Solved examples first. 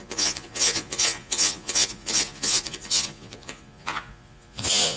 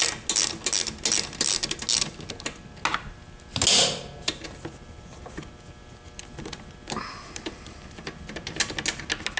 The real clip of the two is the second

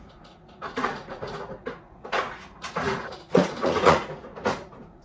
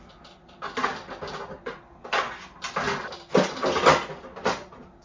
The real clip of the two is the second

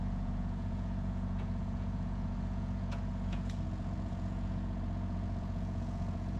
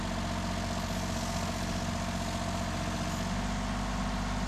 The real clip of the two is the second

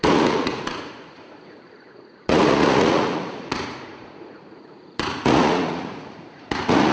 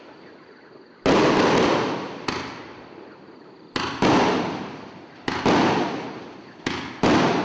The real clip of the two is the second